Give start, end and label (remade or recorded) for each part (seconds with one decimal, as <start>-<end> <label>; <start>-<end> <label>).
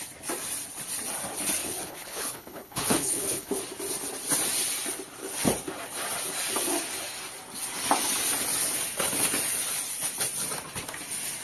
0.0-1.6 recorded; 1.6-3.6 remade; 3.6-11.4 recorded